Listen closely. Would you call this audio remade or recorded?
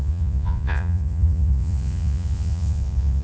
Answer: remade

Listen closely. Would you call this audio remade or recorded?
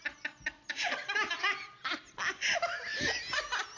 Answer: recorded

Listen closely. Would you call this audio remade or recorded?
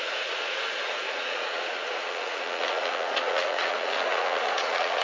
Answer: remade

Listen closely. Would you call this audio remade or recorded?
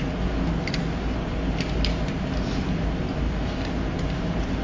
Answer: recorded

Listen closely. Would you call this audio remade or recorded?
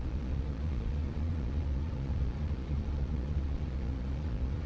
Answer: remade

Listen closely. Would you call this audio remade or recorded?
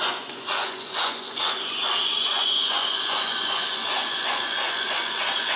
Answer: remade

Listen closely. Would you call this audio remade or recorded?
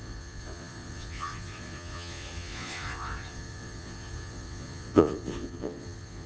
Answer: remade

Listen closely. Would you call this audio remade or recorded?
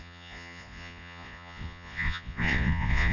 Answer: remade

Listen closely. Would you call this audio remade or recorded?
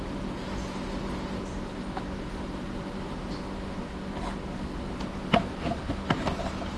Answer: recorded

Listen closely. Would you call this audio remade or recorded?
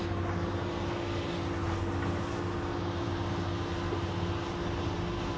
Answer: recorded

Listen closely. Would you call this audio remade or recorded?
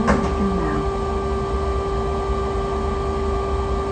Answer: recorded